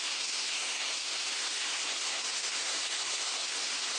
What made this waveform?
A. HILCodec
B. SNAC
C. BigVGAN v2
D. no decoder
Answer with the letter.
B